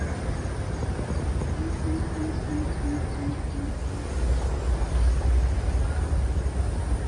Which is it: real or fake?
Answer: real